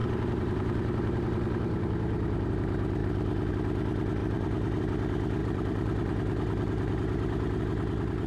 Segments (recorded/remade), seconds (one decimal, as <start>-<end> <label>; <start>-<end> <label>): 0.0-2.5 remade; 2.5-4.2 recorded; 4.2-4.8 remade; 4.8-5.4 recorded; 5.4-7.6 remade; 7.6-8.3 recorded